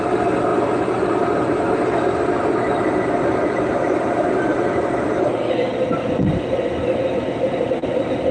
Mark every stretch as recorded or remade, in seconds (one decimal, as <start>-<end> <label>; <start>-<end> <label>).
0.0-8.3 recorded